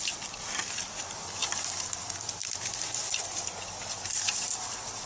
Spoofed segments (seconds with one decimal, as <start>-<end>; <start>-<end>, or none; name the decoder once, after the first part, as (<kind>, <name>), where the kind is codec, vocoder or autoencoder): none